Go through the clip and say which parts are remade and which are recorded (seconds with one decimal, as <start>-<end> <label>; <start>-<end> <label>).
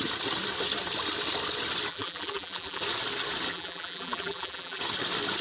0.0-1.9 recorded; 1.9-2.8 remade; 2.8-3.5 recorded; 3.5-4.8 remade; 4.8-5.4 recorded